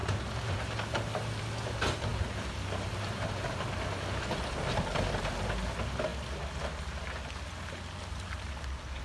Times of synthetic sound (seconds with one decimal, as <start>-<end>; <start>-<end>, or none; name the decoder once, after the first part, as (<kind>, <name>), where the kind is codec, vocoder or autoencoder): 0.0-1.4 (vocoder, BigVGAN v2); 2.1-3.7